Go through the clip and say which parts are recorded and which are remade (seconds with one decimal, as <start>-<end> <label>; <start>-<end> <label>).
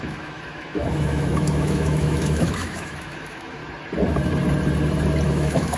0.0-3.6 remade; 3.6-5.3 recorded; 5.3-5.8 remade